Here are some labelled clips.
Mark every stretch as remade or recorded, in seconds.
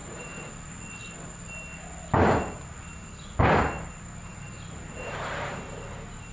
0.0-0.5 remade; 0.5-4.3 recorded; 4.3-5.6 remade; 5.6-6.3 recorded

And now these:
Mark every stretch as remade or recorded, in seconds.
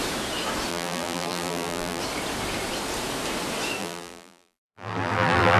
0.0-0.7 recorded; 0.7-2.0 remade; 2.0-3.8 recorded; 3.8-5.6 remade